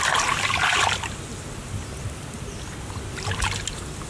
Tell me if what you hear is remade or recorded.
recorded